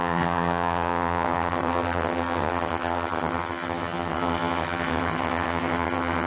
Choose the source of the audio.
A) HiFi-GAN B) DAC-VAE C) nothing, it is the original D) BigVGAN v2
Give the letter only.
A